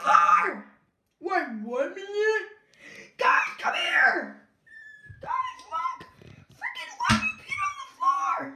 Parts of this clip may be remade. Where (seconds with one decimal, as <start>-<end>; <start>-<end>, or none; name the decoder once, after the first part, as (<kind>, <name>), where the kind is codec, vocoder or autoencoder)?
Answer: 0.0-0.5 (vocoder, BigVGAN v2)